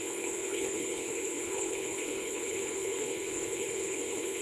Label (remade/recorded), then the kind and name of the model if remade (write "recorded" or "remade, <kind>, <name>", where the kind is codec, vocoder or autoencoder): remade, codec, HILCodec